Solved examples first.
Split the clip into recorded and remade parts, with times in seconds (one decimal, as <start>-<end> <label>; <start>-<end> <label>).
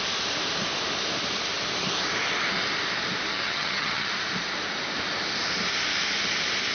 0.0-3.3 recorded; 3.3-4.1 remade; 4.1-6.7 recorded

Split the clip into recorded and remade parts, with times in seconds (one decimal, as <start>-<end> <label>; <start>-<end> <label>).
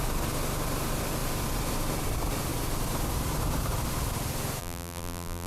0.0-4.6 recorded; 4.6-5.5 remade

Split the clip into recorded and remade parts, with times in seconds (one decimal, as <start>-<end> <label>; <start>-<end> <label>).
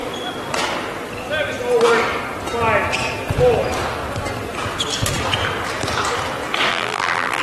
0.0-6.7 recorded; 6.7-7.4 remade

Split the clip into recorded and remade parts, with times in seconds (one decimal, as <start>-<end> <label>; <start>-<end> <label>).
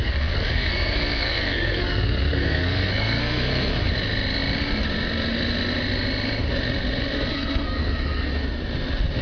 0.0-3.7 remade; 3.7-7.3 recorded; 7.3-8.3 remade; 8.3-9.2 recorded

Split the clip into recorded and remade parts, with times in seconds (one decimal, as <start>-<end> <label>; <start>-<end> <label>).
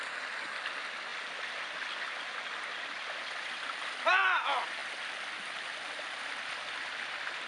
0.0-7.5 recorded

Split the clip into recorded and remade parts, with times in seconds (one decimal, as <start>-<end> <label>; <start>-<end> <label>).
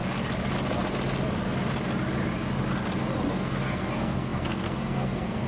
0.0-3.3 recorded; 3.3-5.5 remade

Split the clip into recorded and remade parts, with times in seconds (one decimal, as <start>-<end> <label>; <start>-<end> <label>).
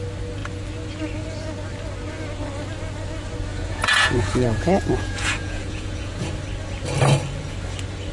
0.0-3.5 recorded; 3.5-6.3 remade; 6.3-8.1 recorded